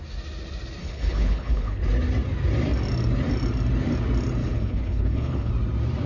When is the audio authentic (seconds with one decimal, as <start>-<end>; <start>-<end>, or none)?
0.0-0.8; 1.8-4.4; 5.5-6.1